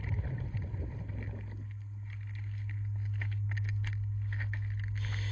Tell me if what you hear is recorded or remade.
recorded